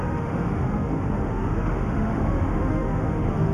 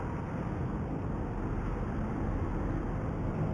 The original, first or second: second